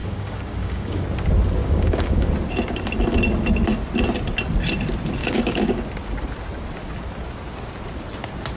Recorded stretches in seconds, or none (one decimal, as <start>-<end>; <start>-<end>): 1.0-1.6; 2.3-5.2; 5.8-8.6